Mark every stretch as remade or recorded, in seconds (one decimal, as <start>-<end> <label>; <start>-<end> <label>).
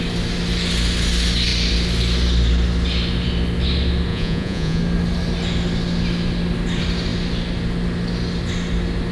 0.0-4.1 recorded; 4.1-4.8 remade; 4.8-9.1 recorded